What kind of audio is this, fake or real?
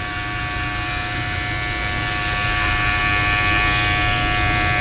real